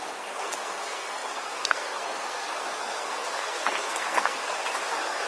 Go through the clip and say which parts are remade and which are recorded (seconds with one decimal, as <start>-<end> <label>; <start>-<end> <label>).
0.0-5.3 remade